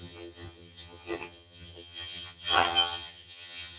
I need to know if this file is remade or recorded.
remade